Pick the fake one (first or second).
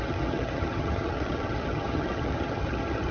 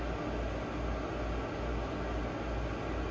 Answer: first